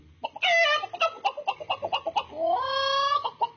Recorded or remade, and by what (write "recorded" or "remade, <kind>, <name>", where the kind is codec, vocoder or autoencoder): recorded